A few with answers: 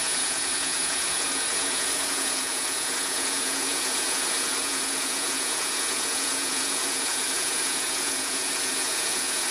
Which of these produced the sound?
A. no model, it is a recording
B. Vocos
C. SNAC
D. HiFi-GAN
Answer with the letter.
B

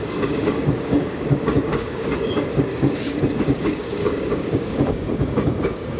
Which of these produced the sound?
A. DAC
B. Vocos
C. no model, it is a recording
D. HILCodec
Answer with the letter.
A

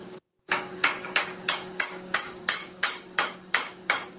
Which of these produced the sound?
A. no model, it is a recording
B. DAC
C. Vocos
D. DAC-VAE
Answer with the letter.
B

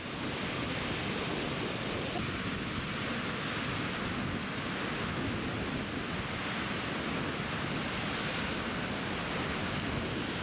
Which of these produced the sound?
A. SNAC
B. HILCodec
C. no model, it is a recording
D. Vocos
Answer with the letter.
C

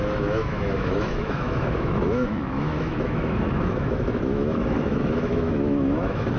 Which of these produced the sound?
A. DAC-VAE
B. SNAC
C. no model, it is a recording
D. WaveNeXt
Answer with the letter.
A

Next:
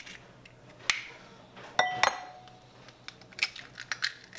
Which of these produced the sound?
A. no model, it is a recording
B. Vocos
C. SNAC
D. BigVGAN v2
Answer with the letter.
A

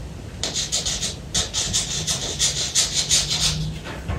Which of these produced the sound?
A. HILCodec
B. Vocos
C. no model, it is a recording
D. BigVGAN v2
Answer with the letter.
C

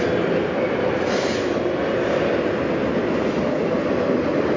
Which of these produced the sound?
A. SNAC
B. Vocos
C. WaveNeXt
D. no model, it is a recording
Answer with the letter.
D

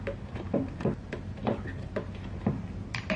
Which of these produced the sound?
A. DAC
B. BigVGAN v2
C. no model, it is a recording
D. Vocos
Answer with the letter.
B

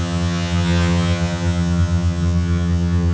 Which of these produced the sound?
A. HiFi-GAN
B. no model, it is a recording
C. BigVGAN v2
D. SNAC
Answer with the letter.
A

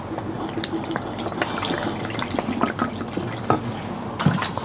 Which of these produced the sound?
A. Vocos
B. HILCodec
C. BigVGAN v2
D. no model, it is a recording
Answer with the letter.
D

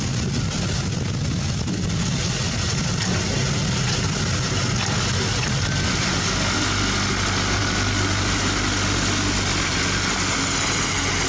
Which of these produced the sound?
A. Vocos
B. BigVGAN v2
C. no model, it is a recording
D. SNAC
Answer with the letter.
C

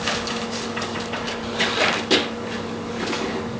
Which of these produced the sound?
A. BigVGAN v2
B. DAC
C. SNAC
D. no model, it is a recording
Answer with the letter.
B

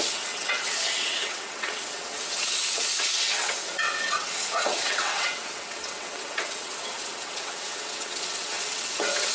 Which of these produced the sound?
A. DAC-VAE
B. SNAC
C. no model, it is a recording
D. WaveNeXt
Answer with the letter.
D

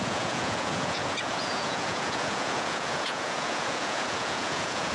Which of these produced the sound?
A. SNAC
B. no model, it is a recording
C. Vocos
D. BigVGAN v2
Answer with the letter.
C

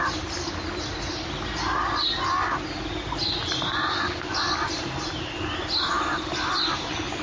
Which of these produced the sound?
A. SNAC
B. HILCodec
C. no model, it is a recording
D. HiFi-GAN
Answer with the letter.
C